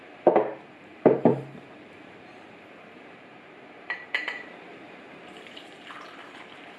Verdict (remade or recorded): remade